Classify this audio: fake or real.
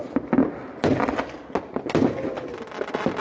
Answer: real